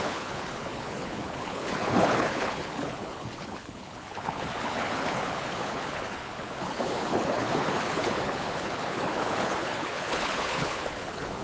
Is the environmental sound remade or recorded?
remade